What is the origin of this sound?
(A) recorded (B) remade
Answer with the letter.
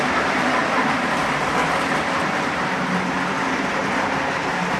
B